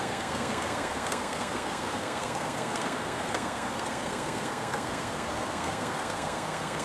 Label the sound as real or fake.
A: fake